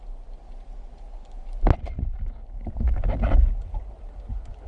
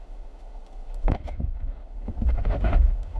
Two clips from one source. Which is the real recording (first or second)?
first